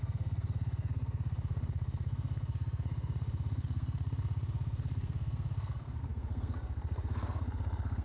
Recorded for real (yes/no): no